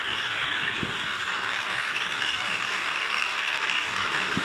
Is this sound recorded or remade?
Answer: remade